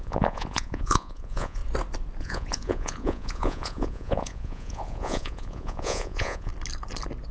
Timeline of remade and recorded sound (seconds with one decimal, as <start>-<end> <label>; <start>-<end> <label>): 0.0-1.6 remade; 1.6-2.2 recorded; 2.2-6.5 remade; 6.5-7.3 recorded